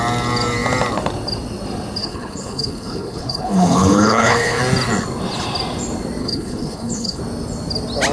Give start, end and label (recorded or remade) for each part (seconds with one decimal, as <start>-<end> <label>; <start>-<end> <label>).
0.0-2.0 recorded; 2.0-4.6 remade; 4.6-6.2 recorded; 6.2-7.2 remade; 7.2-8.1 recorded